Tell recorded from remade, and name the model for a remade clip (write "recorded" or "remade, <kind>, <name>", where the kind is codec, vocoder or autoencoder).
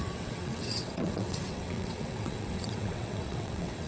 remade, vocoder, WaveNeXt